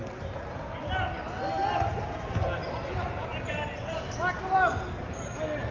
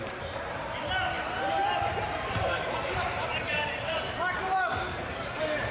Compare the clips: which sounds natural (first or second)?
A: first